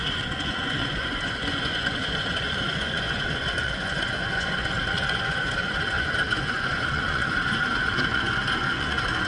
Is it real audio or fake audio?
fake